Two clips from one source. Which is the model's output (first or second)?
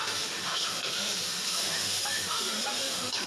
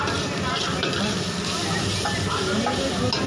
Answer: first